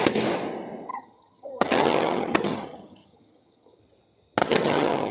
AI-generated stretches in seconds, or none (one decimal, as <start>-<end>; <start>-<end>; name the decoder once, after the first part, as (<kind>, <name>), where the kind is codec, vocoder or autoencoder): 0.9-3.8 (vocoder, HiFi-GAN); 4.4-5.1